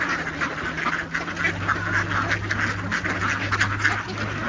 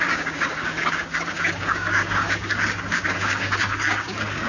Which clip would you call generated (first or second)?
second